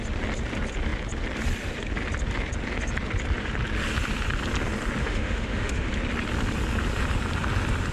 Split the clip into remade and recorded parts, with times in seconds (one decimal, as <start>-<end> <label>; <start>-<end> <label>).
0.0-5.0 recorded; 5.0-5.9 remade; 5.9-7.9 recorded